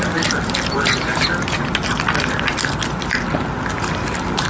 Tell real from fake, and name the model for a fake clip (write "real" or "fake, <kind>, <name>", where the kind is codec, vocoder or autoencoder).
real